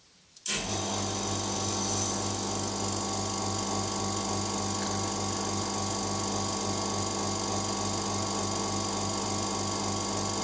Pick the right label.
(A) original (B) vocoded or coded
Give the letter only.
A